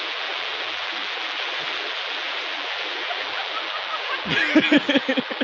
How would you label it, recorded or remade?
remade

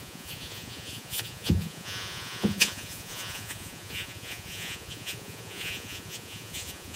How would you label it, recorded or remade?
remade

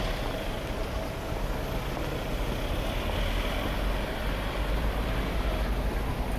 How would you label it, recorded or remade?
recorded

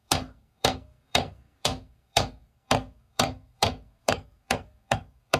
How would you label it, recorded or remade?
remade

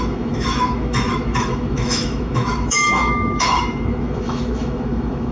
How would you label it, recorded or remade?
remade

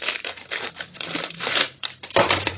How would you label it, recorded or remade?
remade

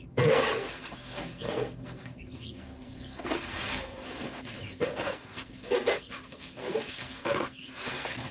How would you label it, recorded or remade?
remade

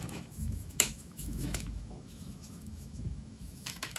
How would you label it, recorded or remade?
remade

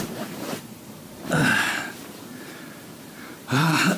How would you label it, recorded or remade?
remade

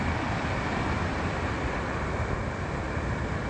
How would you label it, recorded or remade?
recorded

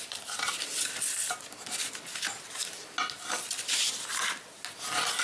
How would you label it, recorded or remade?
recorded